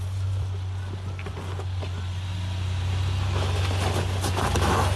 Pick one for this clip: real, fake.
real